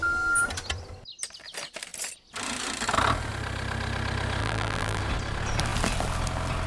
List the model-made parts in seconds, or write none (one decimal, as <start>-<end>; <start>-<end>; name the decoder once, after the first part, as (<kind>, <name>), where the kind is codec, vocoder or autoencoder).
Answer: 4.4-5.0 (vocoder, BigVGAN v2)

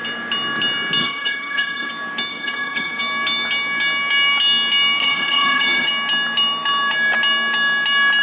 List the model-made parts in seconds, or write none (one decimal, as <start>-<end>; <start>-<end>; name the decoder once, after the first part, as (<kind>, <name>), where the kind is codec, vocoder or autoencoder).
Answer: 1.0-1.9 (vocoder, HiFi-GAN); 2.3-3.0; 5.0-5.9

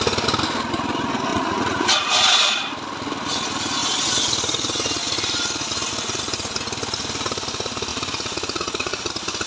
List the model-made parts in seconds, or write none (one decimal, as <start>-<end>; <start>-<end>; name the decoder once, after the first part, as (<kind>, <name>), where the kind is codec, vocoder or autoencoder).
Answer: 1.3-2.6 (vocoder, Vocos); 7.9-9.1

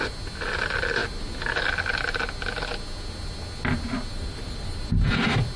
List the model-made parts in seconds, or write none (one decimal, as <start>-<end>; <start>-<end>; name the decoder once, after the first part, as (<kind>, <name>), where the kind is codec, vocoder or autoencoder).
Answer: 4.1-5.1 (vocoder, BigVGAN v2)

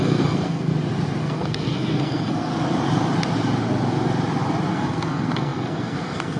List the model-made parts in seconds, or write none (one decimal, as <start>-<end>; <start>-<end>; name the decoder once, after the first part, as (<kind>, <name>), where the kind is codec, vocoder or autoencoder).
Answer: 0.0-0.7 (codec, SNAC); 1.2-2.5; 4.7-6.4

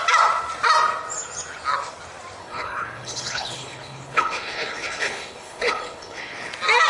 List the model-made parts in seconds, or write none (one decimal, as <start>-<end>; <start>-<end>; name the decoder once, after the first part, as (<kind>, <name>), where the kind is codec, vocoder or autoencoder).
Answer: 2.4-6.5 (codec, HILCodec)